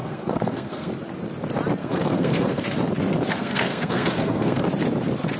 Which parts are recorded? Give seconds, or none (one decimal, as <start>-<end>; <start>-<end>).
0.9-1.8; 2.6-3.3; 4.7-5.4